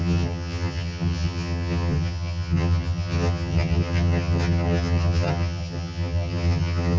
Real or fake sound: fake